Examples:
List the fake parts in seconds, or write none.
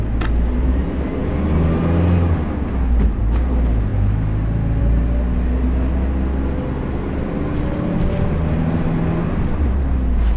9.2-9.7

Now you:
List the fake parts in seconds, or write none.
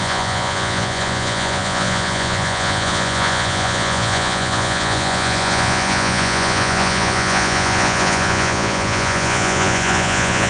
0.0-10.5